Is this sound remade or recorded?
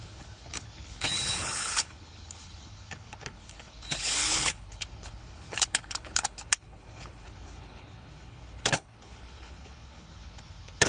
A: remade